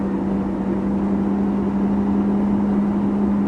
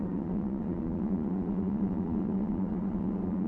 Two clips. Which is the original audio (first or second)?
first